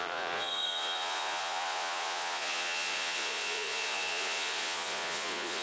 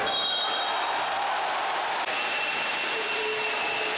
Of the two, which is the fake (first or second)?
first